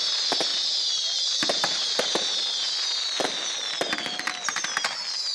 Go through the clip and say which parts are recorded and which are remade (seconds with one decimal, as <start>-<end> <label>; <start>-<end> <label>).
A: 0.0-0.5 recorded; 0.5-2.1 remade; 2.1-5.3 recorded

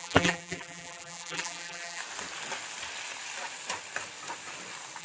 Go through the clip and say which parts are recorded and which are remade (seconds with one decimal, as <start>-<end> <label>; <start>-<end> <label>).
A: 0.0-2.0 remade; 2.0-5.0 recorded

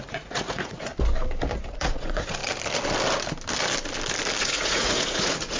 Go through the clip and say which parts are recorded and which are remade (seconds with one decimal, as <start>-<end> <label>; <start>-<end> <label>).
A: 0.0-0.9 remade; 0.9-1.7 recorded; 1.7-2.4 remade; 2.4-4.4 recorded; 4.4-5.6 remade